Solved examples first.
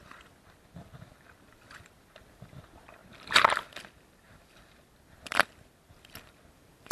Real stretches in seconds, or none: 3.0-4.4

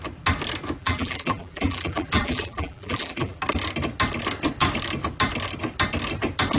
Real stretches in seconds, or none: 0.0-0.8; 3.4-6.6